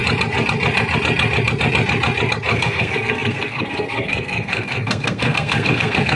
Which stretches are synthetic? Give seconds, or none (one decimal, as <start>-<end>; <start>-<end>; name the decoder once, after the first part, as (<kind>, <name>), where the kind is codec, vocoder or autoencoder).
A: 2.5-6.2 (codec, SNAC)